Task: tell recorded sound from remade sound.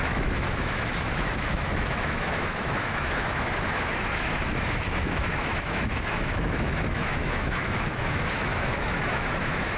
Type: remade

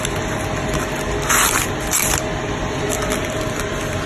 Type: recorded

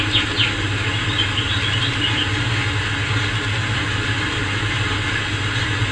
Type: recorded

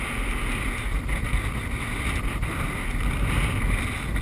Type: recorded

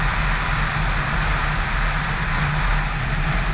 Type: recorded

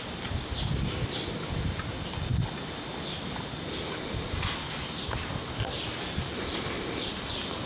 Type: recorded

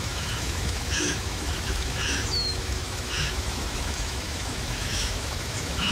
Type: remade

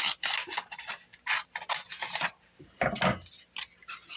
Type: recorded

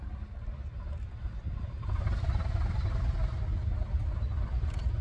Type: recorded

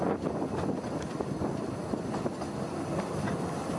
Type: recorded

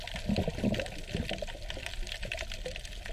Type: recorded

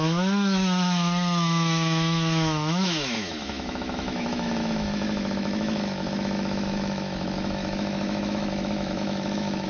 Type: remade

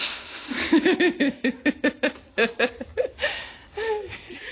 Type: recorded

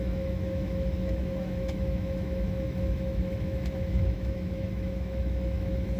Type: remade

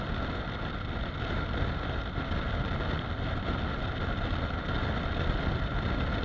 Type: recorded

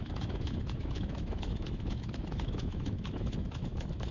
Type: remade